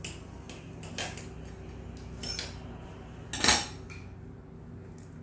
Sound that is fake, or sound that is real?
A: real